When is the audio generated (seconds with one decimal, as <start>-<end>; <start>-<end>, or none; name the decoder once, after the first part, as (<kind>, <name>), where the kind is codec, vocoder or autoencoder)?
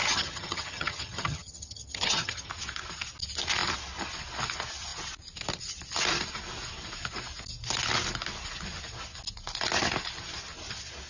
0.0-2.5 (vocoder, HiFi-GAN)